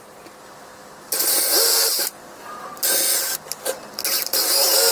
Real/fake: real